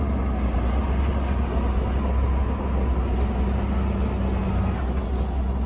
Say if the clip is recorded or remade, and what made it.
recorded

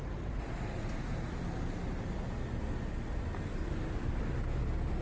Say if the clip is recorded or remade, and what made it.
recorded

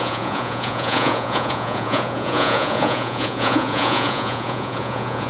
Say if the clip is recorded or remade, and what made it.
remade, vocoder, Vocos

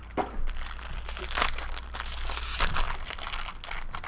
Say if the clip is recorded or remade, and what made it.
recorded